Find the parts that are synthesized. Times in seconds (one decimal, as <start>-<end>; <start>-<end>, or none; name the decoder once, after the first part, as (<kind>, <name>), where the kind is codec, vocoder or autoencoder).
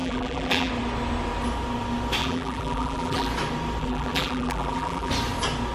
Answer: 0.0-0.7 (vocoder, BigVGAN v2); 2.2-3.3; 3.8-5.1